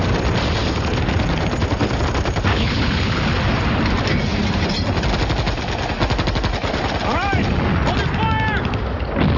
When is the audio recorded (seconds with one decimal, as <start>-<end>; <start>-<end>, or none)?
0.0-2.5; 3.2-9.4